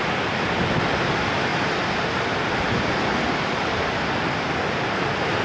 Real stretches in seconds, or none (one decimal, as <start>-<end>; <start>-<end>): 0.0-5.4